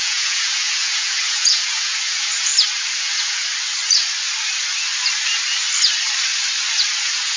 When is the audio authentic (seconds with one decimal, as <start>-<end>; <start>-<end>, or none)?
2.5-3.0; 3.5-7.0